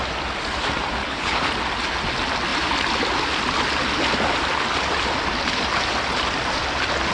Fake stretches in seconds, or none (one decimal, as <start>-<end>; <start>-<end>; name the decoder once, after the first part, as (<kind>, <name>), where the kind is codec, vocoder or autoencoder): 1.0-1.5 (codec, HILCodec)